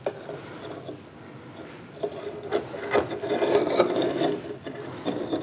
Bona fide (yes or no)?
yes